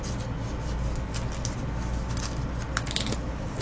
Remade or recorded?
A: recorded